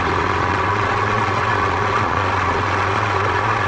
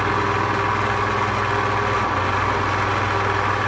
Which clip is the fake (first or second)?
first